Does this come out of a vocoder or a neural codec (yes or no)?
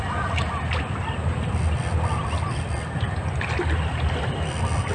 no